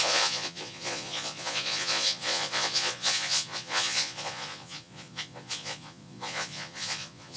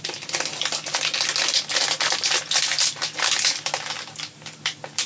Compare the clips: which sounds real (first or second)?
second